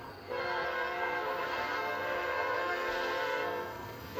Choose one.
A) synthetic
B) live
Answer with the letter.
A